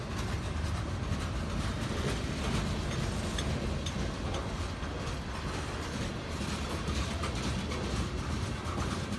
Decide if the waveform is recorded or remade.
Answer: recorded